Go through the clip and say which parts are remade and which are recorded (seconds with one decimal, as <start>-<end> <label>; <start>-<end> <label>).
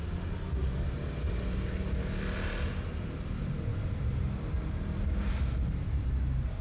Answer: 0.0-6.6 recorded